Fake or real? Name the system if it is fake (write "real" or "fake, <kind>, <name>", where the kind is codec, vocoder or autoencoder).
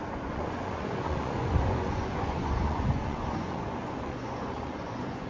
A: fake, vocoder, Vocos